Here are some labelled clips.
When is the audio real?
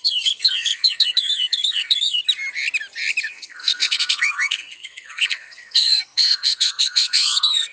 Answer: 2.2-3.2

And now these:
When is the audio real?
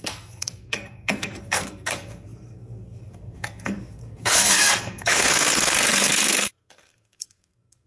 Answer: none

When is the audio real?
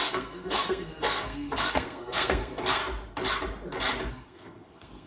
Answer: 2.8-4.1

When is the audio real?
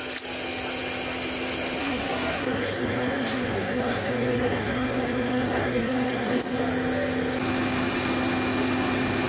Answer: 0.0-1.8; 6.6-9.3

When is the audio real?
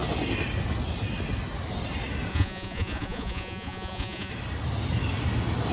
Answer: 0.0-2.3; 4.3-5.7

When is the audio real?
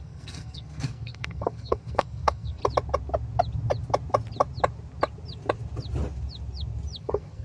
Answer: 2.6-7.0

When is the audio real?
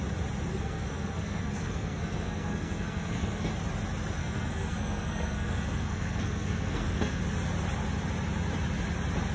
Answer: 0.0-0.5; 3.5-4.2; 7.2-9.3